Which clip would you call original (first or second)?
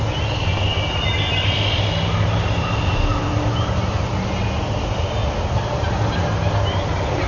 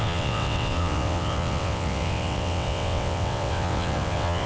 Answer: first